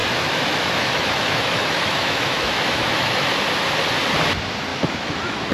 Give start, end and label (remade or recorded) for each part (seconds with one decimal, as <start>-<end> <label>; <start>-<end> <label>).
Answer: 0.0-3.3 remade; 3.3-4.7 recorded; 4.7-5.5 remade